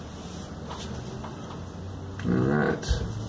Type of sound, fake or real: real